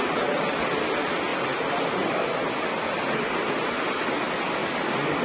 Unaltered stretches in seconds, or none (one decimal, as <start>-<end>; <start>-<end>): 0.0-5.2